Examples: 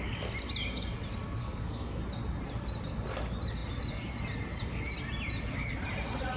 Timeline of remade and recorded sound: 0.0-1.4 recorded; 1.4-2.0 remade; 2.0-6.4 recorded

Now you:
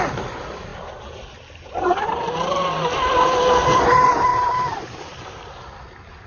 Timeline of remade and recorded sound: 0.0-4.3 recorded; 4.3-5.0 remade; 5.0-6.3 recorded

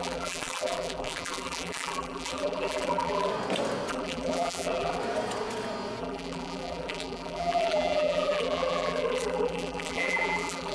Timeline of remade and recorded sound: 0.0-3.3 remade; 3.3-3.9 recorded; 3.9-5.0 remade; 5.0-6.0 recorded; 6.0-10.7 remade

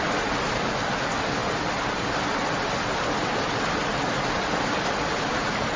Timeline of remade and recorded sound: 0.0-5.8 recorded

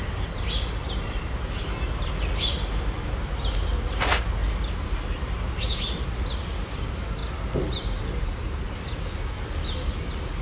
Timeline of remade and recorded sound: 0.0-10.4 recorded